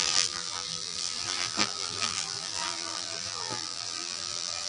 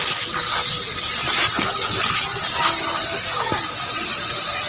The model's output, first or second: first